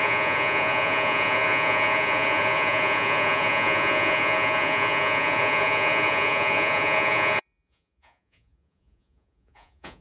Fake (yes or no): yes